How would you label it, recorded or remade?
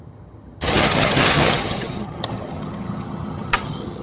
remade